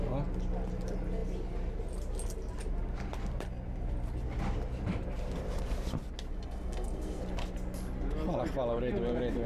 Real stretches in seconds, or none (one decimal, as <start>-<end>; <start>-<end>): 0.0-6.3; 7.2-9.5